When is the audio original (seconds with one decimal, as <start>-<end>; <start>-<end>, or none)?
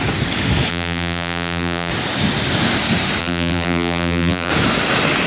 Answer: 0.0-0.7; 1.9-3.2; 4.5-5.3